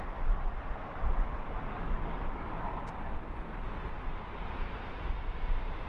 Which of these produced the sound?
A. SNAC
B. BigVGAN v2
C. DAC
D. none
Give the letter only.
D